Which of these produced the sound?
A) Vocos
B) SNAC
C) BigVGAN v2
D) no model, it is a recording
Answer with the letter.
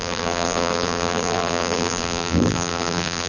C